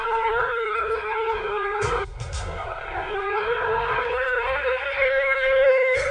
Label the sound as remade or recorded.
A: remade